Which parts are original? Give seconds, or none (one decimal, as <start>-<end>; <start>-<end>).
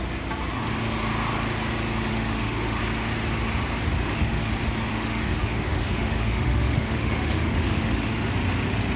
0.0-2.1; 2.8-4.0; 4.5-4.9; 8.3-9.0